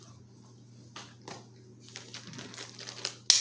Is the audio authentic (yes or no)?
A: yes